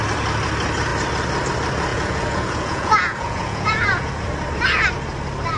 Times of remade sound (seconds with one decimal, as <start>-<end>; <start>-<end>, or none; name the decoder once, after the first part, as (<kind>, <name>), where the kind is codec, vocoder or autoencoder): 1.9-4.1 (vocoder, Vocos)